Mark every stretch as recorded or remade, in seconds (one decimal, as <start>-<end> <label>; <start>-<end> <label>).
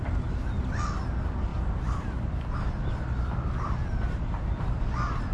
0.0-1.5 recorded; 1.5-4.4 remade; 4.4-5.3 recorded